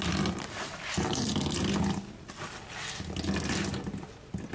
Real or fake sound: real